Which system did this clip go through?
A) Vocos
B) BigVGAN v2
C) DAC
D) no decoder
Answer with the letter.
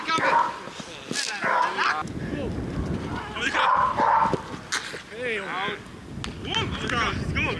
D